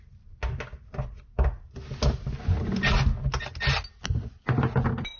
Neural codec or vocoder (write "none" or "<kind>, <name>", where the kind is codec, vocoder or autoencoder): none